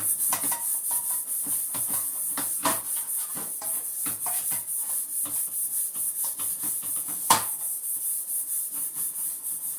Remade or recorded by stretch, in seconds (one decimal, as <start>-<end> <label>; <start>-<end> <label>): 0.0-0.7 remade; 0.7-1.8 recorded; 1.8-2.3 remade; 2.3-2.9 recorded; 2.9-5.1 remade; 5.1-6.2 recorded; 6.2-9.8 remade